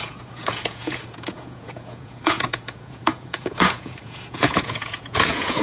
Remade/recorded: remade